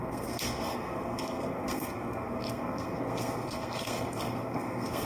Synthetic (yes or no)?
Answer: yes